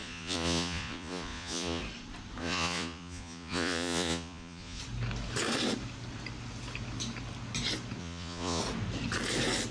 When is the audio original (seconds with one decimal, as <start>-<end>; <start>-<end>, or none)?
1.8-2.4; 4.8-8.0; 8.6-9.7